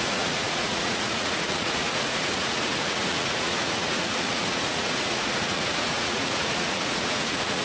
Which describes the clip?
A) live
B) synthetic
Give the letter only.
B